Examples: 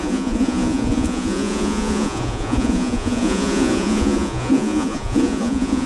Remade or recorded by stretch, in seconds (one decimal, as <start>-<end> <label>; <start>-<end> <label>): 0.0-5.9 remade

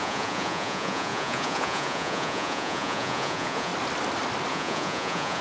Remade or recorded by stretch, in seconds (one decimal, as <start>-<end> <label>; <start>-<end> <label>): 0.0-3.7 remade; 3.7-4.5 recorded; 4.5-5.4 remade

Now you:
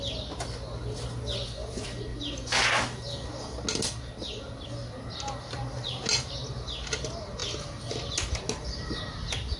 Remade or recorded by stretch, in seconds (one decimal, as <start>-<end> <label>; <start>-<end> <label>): 0.0-9.6 recorded

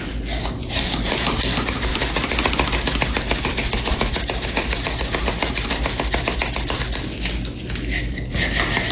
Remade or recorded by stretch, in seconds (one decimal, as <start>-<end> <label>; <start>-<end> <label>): 0.0-8.9 recorded

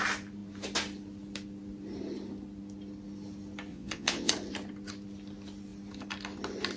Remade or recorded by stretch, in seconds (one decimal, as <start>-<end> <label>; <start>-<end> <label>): 0.0-3.7 recorded; 3.7-4.3 remade; 4.3-6.8 recorded

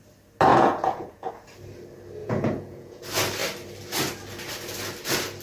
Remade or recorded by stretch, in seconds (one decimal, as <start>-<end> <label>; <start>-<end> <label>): 0.0-0.5 recorded; 0.5-1.3 remade; 1.3-2.2 recorded; 2.2-3.0 remade; 3.0-5.4 recorded

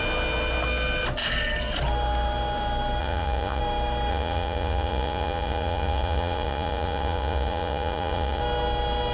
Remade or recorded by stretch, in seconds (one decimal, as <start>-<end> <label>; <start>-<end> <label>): 0.0-3.0 recorded; 3.0-3.6 remade; 3.6-4.1 recorded; 4.1-8.4 remade; 8.4-9.1 recorded